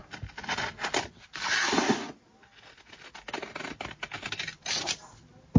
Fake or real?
real